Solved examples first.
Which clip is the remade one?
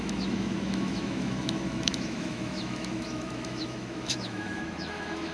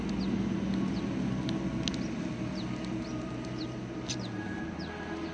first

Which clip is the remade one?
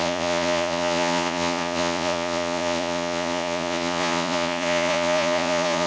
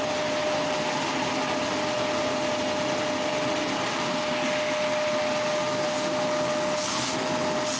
first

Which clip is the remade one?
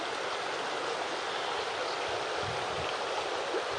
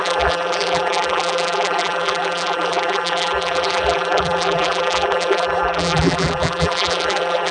second